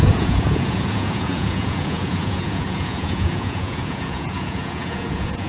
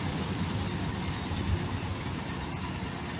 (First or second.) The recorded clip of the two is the second